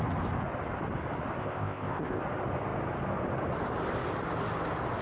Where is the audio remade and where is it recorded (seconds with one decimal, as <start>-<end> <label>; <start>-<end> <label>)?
0.0-1.4 recorded; 1.4-2.2 remade; 2.2-5.0 recorded